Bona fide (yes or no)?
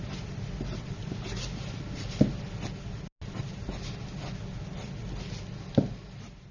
yes